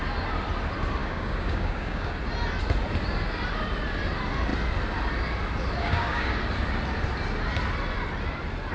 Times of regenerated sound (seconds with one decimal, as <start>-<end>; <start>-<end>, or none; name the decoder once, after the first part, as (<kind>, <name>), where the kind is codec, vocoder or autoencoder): 1.0-2.2 (codec, DAC); 5.8-6.4